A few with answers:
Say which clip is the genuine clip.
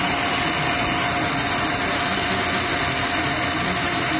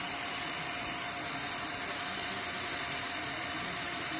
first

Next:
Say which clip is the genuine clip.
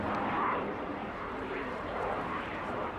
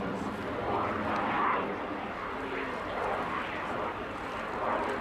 second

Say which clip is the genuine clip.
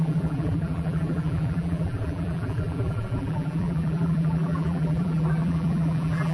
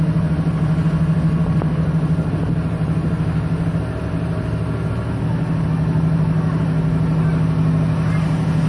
second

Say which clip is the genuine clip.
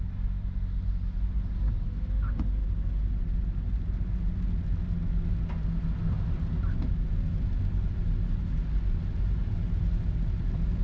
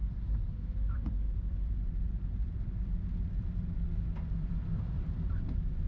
first